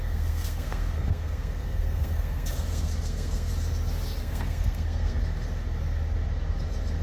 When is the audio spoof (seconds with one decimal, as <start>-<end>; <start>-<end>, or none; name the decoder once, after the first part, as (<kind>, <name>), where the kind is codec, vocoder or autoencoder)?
0.0-3.5 (codec, SNAC); 4.2-5.2